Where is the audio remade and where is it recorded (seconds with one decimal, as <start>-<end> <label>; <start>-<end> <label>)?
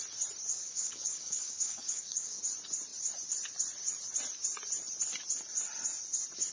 0.0-0.5 recorded; 0.5-2.4 remade; 2.4-6.5 recorded